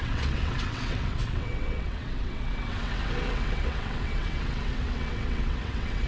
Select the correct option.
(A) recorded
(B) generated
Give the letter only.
B